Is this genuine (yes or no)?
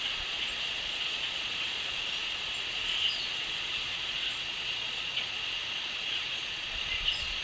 no